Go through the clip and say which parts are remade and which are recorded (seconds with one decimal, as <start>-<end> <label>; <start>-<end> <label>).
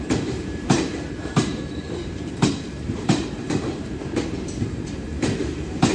0.0-5.9 remade